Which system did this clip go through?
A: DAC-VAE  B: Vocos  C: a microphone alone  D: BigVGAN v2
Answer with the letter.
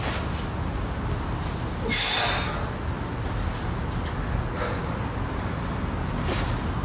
C